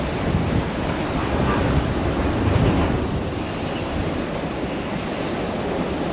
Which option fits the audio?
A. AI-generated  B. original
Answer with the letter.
B